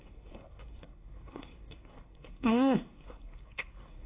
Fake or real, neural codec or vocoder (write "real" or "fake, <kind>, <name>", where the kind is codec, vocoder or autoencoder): fake, codec, SNAC